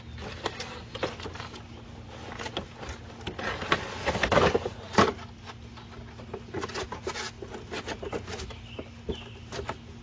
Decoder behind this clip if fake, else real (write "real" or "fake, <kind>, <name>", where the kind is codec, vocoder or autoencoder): real